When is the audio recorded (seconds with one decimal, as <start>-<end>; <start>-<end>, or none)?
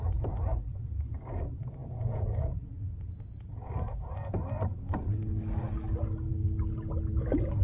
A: 0.0-1.8; 3.7-4.7; 5.2-7.6